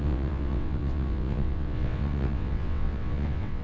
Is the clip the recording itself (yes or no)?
no